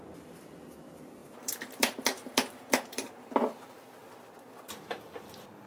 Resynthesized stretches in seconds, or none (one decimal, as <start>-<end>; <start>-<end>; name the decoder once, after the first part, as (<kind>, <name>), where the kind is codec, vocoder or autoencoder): 1.2-3.3 (vocoder, BigVGAN v2)